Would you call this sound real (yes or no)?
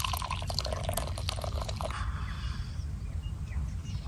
yes